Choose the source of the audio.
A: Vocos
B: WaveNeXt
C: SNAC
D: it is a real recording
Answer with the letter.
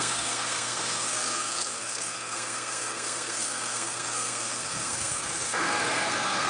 C